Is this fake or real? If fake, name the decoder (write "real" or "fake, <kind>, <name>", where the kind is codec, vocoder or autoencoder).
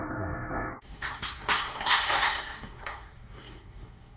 fake, codec, SNAC